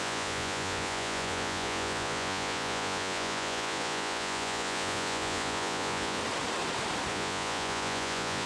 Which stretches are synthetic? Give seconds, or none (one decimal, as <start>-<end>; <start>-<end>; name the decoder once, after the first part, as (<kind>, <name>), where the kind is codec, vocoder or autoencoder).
0.0-6.2 (vocoder, Vocos); 7.1-8.5